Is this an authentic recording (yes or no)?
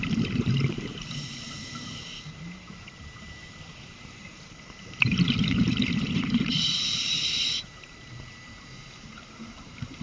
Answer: no